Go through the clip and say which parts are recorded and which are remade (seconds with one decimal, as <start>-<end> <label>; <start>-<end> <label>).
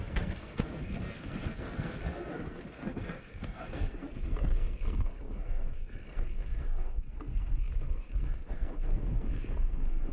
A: 0.0-10.1 remade